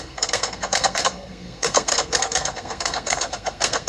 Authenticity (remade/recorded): remade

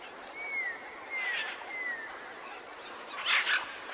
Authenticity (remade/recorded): recorded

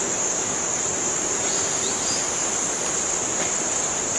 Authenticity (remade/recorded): recorded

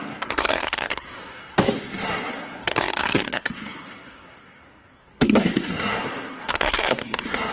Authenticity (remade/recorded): remade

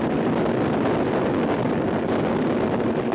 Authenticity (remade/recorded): recorded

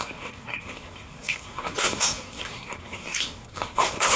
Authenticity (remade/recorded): remade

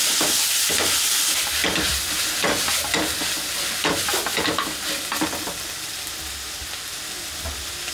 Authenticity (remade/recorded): recorded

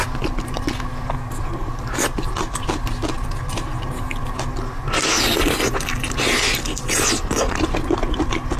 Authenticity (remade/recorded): recorded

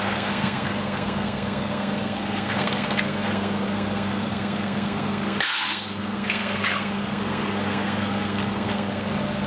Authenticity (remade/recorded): remade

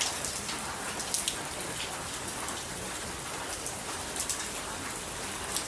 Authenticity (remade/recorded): recorded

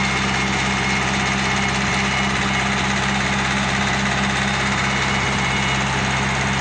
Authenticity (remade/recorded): recorded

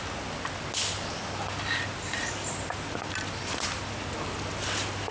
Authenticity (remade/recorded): recorded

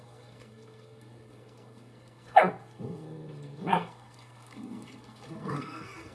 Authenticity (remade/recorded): remade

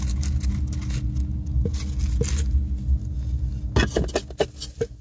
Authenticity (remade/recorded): recorded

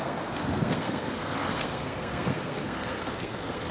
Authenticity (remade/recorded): remade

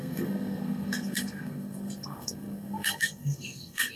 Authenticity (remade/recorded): remade